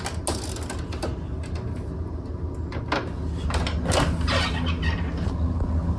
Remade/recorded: recorded